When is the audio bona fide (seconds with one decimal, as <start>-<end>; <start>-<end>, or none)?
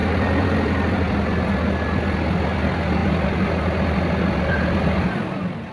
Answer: 0.0-5.7